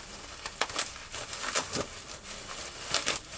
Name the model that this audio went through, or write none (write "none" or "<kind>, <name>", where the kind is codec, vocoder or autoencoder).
none